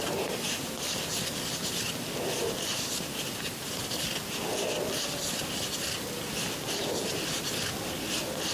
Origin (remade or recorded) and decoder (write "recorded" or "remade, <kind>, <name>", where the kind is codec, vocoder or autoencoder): recorded